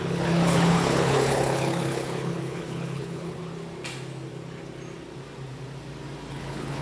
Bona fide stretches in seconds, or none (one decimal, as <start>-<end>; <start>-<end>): 3.4-6.3